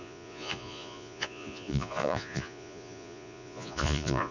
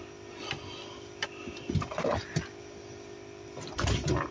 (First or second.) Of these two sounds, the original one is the second